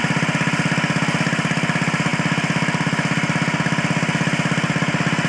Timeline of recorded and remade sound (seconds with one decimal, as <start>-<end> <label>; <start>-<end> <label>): 0.0-5.3 recorded